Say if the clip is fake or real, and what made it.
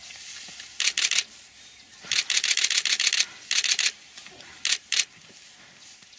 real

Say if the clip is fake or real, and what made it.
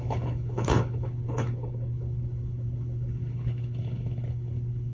fake, codec, HILCodec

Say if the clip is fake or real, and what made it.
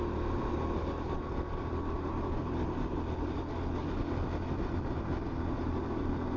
real